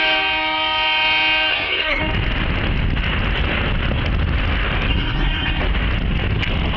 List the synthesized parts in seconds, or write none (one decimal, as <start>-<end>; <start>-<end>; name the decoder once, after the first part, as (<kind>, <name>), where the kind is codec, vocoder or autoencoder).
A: 1.5-2.0 (codec, SNAC); 4.9-5.6